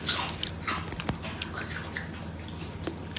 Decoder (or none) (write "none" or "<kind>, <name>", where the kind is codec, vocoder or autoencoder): none